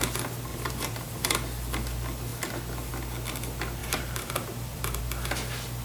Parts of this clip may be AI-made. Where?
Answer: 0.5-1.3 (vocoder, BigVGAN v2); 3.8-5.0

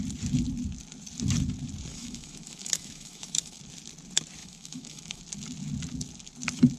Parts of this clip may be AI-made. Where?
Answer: 1.9-3.6 (autoencoder, DAC-VAE); 4.4-5.2

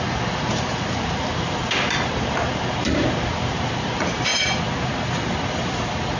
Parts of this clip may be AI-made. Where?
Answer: 0.0-6.2 (vocoder, BigVGAN v2)

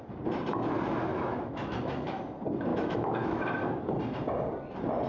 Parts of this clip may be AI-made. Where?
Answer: 1.1-2.2 (autoencoder, DAC-VAE); 2.7-3.9

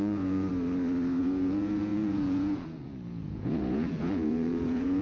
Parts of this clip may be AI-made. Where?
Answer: 0.0-0.5 (vocoder, Vocos); 1.2-5.0

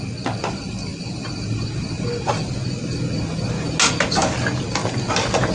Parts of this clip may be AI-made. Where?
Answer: none